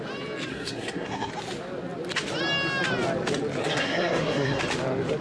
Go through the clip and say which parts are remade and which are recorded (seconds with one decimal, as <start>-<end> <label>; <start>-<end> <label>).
0.0-0.5 recorded; 0.5-1.3 remade; 1.3-3.6 recorded; 3.6-4.6 remade; 4.6-5.2 recorded

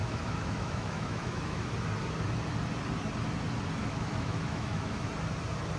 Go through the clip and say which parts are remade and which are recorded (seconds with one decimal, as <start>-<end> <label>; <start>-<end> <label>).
0.0-1.7 remade; 1.7-3.8 recorded; 3.8-5.1 remade; 5.1-5.8 recorded